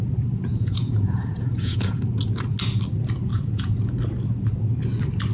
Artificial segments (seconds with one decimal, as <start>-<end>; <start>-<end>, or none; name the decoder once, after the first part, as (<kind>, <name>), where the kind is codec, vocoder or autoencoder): 0.5-2.0 (vocoder, Vocos); 3.3-3.8